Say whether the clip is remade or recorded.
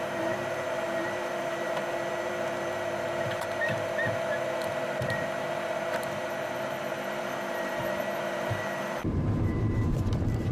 remade